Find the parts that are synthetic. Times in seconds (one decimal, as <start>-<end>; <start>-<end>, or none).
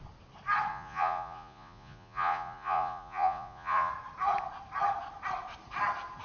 0.7-3.9